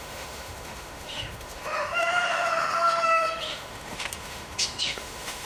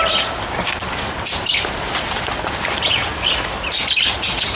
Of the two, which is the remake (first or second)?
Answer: first